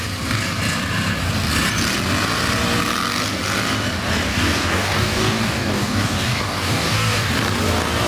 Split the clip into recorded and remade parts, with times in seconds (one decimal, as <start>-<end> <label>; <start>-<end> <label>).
0.0-4.3 recorded; 4.3-7.3 remade; 7.3-8.1 recorded